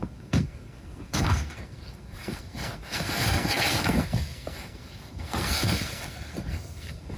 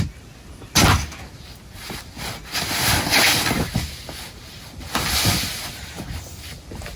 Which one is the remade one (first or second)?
first